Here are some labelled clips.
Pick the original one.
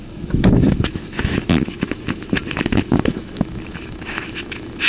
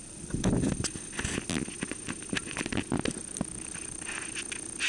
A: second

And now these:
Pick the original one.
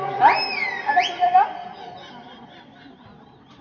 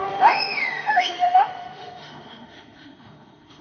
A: first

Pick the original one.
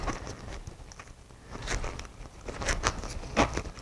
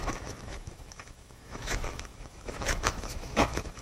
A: first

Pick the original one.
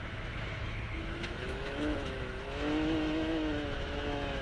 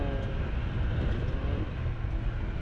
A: second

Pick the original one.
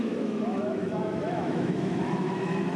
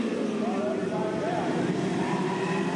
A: second